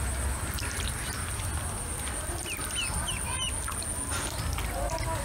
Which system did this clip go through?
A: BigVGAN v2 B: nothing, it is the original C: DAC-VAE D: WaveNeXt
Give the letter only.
B